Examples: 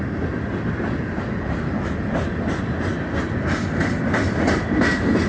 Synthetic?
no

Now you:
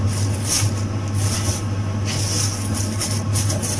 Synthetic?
no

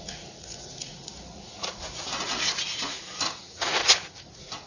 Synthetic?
yes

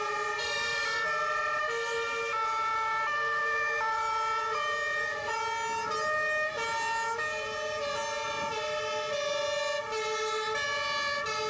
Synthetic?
no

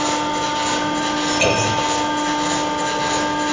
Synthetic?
no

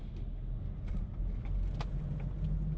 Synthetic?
no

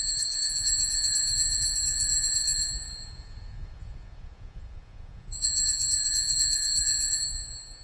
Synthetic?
yes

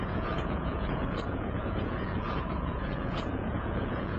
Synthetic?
yes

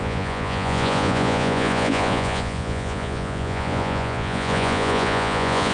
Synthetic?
yes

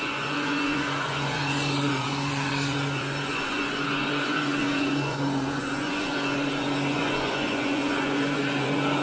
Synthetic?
yes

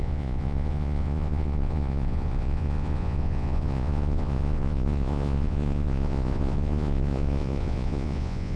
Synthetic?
yes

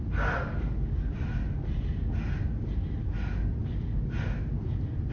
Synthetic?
no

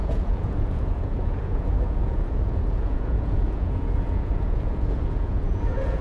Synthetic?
yes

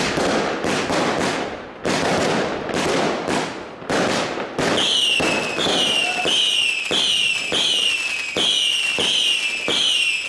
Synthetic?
no